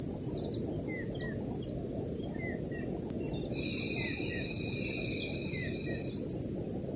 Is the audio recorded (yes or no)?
yes